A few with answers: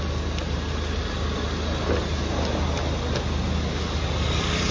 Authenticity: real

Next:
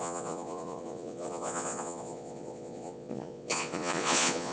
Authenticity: fake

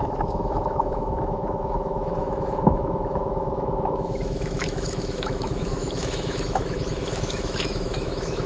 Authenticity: fake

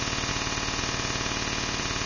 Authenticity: real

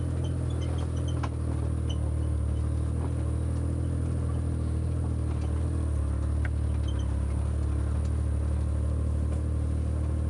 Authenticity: real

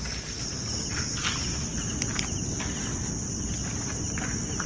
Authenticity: real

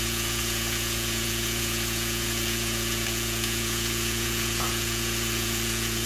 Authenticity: fake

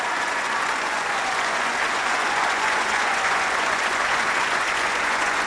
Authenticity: fake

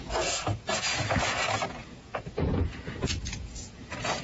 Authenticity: fake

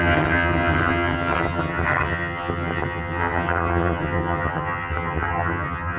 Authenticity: fake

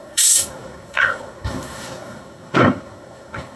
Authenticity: fake